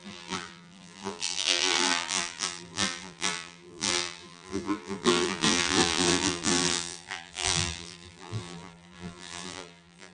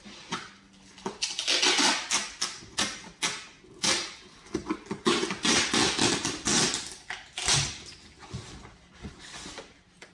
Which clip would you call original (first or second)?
second